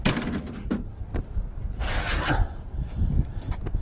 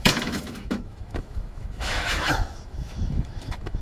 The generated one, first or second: second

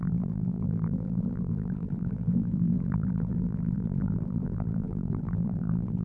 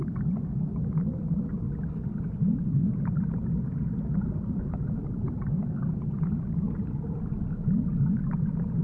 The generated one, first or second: first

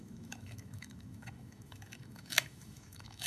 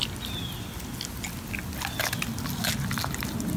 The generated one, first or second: first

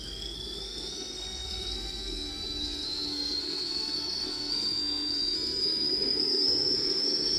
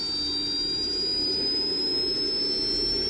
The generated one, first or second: first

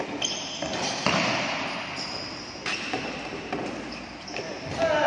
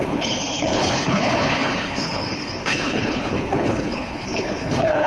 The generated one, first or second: second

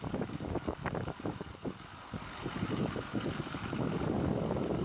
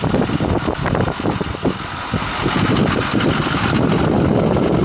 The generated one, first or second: first